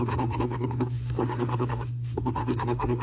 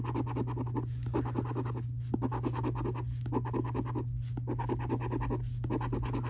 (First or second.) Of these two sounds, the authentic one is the second